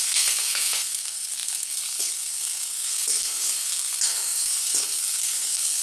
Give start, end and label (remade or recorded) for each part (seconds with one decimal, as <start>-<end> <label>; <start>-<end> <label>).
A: 0.0-5.8 remade